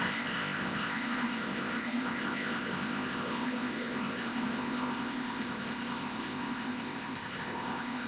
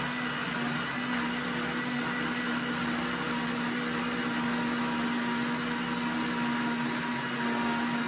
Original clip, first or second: second